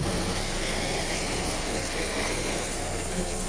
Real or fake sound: fake